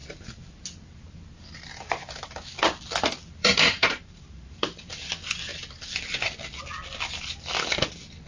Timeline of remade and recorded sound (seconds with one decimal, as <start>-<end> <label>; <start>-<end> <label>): 0.0-3.4 recorded; 3.4-5.1 remade; 5.1-8.3 recorded